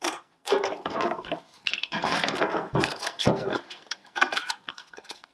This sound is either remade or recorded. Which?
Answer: remade